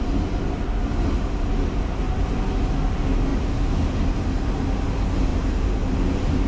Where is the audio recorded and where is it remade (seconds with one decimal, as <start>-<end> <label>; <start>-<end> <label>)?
0.0-6.5 recorded